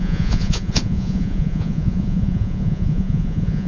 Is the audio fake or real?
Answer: fake